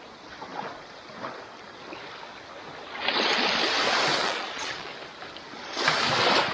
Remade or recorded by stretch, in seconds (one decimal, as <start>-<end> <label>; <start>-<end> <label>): 0.0-4.2 recorded; 4.2-4.9 remade; 4.9-6.5 recorded